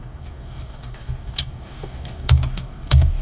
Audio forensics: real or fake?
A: fake